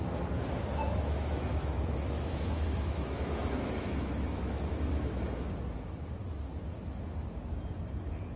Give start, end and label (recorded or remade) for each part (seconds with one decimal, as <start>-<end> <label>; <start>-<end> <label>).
0.0-0.8 recorded; 0.8-5.5 remade; 5.5-8.4 recorded